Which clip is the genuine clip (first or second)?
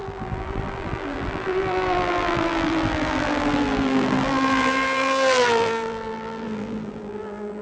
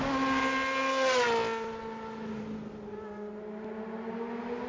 second